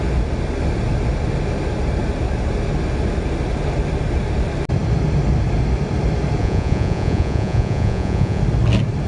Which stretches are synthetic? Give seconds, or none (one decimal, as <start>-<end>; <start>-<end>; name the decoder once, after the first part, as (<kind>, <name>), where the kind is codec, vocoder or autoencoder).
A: 6.4-8.4 (vocoder, Vocos)

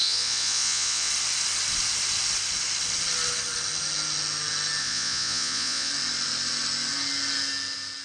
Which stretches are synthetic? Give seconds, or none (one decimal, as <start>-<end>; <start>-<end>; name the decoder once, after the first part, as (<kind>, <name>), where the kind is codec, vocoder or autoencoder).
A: 0.0-1.1 (vocoder, Vocos); 4.8-5.9